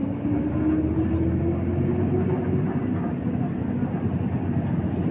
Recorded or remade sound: recorded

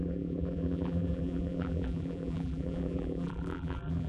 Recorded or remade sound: remade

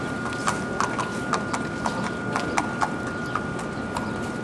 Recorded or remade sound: remade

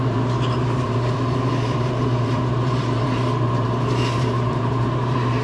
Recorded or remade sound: remade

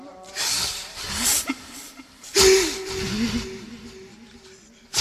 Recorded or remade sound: recorded